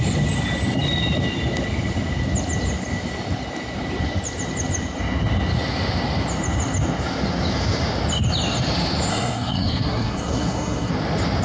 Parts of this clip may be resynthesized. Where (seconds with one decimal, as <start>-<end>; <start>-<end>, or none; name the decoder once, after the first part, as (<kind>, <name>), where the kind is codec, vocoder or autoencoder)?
9.1-10.9 (codec, SNAC)

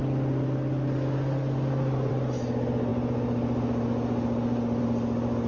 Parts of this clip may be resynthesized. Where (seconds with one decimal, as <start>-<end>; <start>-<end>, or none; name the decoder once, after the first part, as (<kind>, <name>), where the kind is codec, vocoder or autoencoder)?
none

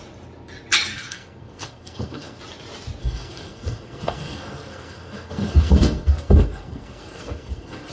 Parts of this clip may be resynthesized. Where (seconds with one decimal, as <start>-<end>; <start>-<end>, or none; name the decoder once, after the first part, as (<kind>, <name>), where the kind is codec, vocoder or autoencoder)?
0.9-2.4 (codec, SNAC); 3.0-7.9

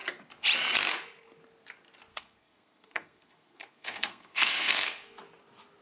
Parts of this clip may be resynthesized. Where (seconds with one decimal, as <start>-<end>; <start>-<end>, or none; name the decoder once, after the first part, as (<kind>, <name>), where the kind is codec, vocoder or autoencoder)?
2.1-5.2 (codec, SNAC)

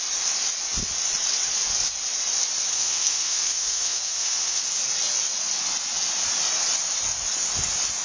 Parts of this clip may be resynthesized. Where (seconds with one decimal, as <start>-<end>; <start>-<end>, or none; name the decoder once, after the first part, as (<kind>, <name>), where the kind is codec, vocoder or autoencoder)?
2.7-4.6 (codec, SNAC)